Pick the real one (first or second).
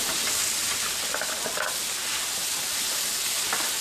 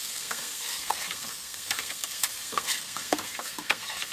first